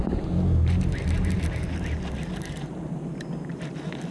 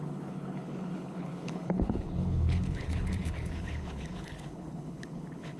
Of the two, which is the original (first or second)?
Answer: first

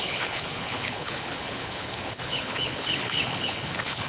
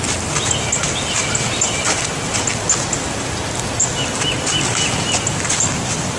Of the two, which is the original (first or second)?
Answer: second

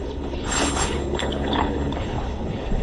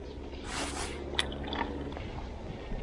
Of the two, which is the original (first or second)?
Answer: second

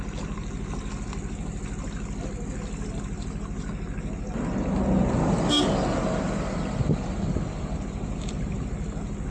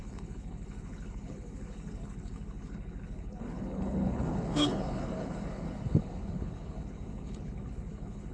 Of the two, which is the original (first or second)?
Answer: first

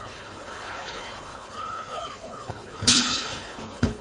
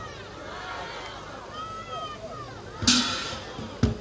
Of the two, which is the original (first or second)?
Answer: second